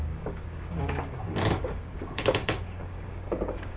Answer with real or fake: fake